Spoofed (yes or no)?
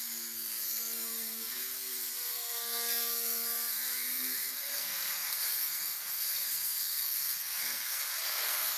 yes